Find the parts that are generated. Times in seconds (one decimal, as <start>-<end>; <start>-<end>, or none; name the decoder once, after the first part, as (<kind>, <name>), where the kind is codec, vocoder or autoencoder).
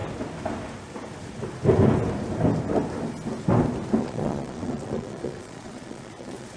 4.0-6.6 (vocoder, Vocos)